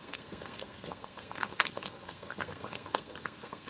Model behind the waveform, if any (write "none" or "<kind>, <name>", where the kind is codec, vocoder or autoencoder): codec, SNAC